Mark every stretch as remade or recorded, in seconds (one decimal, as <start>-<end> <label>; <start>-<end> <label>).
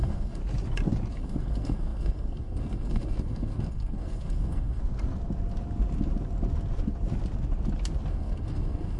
0.0-0.4 remade; 0.4-1.1 recorded; 1.1-4.8 remade; 4.8-8.1 recorded; 8.1-9.0 remade